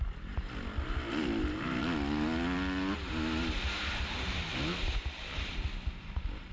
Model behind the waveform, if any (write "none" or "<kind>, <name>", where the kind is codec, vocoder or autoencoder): none